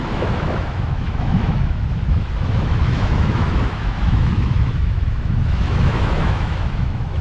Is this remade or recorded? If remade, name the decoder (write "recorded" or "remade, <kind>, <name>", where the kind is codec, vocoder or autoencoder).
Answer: remade, autoencoder, DAC-VAE